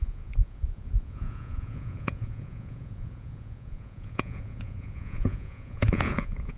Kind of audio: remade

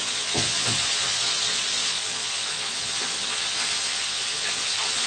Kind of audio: remade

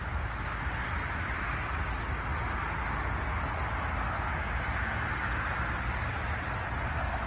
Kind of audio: recorded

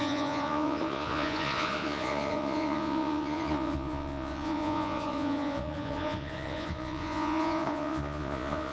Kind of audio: remade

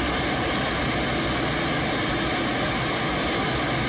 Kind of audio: recorded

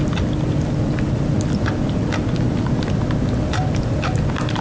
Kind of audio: recorded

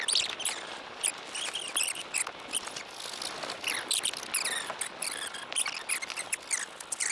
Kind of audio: recorded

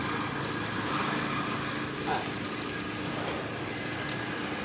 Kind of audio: recorded